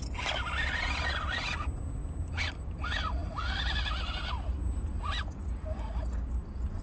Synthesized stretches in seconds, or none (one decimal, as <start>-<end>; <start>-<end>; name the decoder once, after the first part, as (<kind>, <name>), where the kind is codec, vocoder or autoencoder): none